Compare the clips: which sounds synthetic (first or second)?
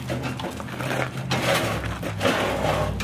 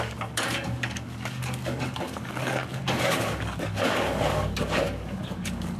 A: second